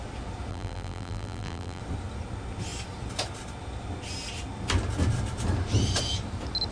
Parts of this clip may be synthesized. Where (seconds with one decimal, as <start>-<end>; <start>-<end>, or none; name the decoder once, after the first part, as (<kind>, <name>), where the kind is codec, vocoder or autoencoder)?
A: 0.5-1.8 (vocoder, BigVGAN v2)